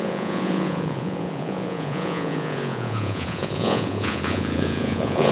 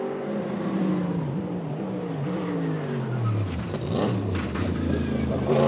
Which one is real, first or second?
second